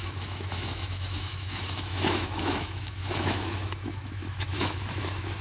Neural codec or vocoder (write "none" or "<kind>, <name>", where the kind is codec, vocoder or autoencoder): autoencoder, DAC-VAE